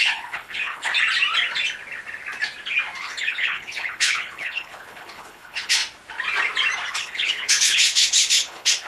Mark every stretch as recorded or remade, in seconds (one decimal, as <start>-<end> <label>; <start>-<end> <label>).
0.0-0.9 remade; 0.9-3.0 recorded; 3.0-5.8 remade; 5.8-6.9 recorded; 6.9-8.9 remade